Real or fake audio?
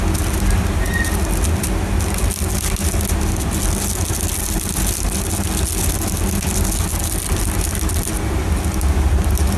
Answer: real